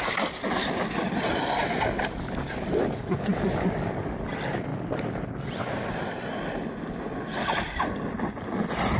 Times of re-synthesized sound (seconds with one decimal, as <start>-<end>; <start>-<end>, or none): 4.7-5.3